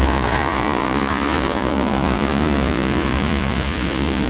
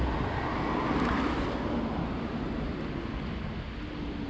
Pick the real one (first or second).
second